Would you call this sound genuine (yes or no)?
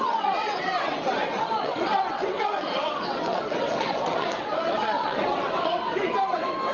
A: no